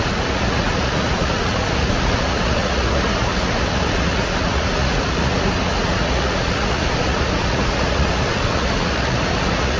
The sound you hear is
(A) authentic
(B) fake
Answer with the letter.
B